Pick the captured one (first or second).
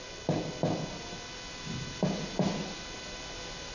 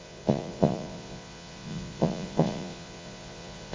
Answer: first